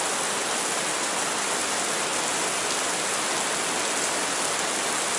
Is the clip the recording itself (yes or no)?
yes